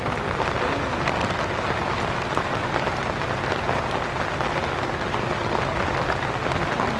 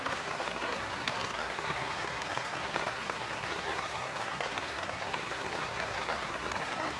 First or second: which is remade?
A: second